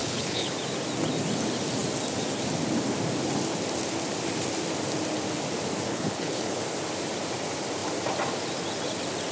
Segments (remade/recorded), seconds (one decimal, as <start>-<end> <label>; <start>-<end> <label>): 0.0-0.5 remade; 0.5-5.9 recorded; 5.9-6.6 remade; 6.6-9.3 recorded